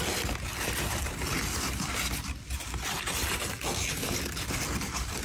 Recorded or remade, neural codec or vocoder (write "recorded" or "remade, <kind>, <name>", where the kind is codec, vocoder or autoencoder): recorded